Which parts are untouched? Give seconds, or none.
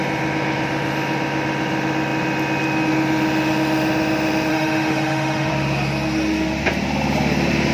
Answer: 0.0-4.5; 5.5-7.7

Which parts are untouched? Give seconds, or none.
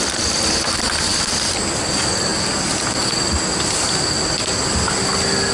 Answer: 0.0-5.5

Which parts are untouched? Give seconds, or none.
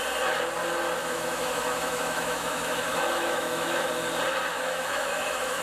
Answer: 0.0-1.0; 3.9-4.5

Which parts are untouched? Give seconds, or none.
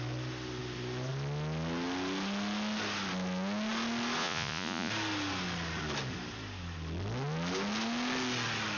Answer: 0.0-4.2; 4.9-8.8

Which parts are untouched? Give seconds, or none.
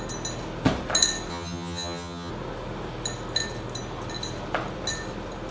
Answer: 0.0-1.3; 2.3-5.5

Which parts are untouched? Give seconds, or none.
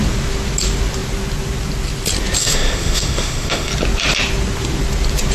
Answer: 0.0-2.4; 3.7-5.3